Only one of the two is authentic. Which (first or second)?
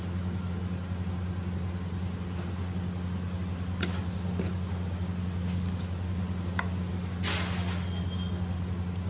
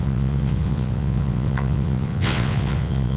first